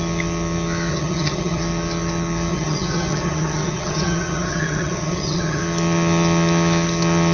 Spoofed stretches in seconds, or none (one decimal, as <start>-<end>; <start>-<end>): 0.9-1.6; 2.5-5.6